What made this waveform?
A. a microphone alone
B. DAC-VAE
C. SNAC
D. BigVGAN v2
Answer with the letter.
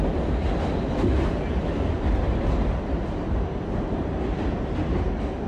A